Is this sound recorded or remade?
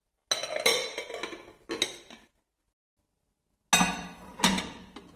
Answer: recorded